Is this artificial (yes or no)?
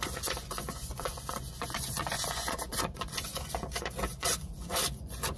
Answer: yes